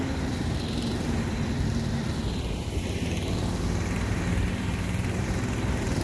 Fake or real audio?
fake